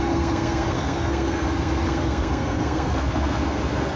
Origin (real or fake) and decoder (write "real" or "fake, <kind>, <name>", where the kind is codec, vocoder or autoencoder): fake, codec, SNAC